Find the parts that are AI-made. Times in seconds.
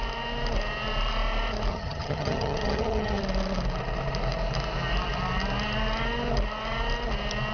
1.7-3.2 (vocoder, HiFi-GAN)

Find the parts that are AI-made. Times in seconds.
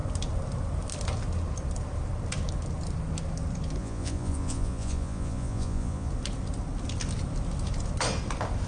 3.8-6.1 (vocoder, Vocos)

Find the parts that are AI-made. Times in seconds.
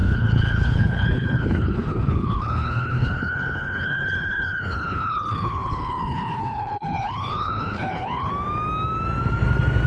0.0-8.3 (codec, HILCodec)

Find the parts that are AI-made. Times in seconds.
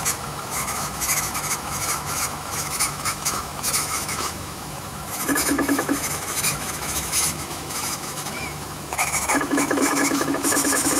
0.0-11.0 (autoencoder, DAC-VAE)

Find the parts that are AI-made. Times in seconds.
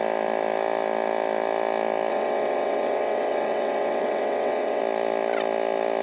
2.1-4.8 (vocoder, WaveNeXt)